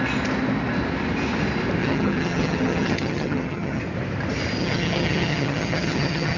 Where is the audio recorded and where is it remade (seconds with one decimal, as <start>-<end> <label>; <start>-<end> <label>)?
0.0-1.8 recorded; 1.8-3.8 remade; 3.8-4.6 recorded; 4.6-6.4 remade